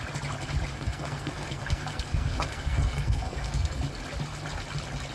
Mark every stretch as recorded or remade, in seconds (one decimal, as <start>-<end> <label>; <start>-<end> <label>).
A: 0.0-0.7 recorded; 0.7-3.8 remade; 3.8-5.1 recorded